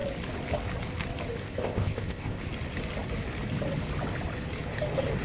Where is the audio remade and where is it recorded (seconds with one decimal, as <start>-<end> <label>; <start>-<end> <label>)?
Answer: 0.0-1.4 recorded; 1.4-2.4 remade; 2.4-5.2 recorded